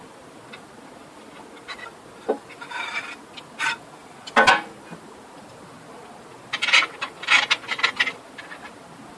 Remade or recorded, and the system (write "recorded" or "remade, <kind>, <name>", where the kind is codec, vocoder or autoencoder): recorded